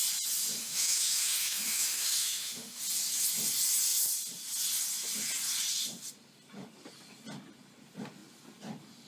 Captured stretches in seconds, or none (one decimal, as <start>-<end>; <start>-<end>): 0.0-0.6; 2.8-9.1